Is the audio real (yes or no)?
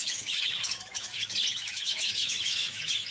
no